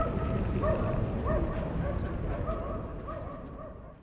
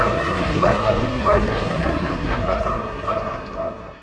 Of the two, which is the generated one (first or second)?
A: second